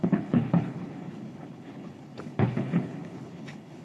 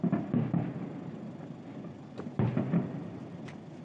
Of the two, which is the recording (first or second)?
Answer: second